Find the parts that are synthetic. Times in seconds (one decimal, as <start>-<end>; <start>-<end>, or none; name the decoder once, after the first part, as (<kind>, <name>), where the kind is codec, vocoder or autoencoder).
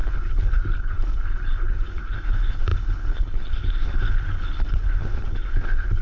0.0-6.0 (codec, HILCodec)